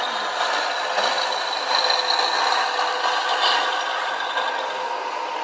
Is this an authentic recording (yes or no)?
yes